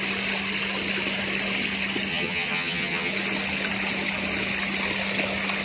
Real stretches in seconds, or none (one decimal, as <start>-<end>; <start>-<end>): 0.0-2.1; 3.1-5.6